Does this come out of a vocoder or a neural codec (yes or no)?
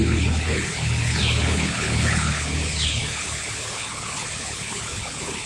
yes